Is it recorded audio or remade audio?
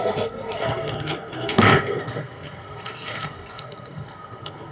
remade